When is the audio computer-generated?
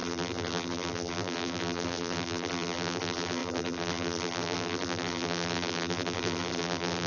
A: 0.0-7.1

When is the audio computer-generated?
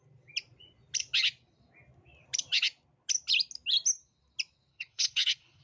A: 4.7-5.6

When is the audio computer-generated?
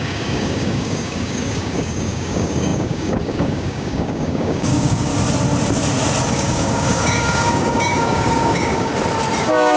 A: 0.0-5.1; 6.3-8.9; 9.4-9.8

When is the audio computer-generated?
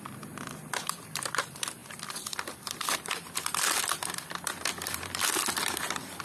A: 0.0-6.2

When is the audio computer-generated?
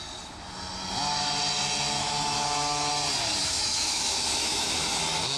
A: 2.0-2.9; 3.4-5.0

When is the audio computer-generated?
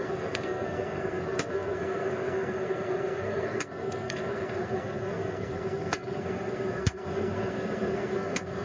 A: 0.0-8.6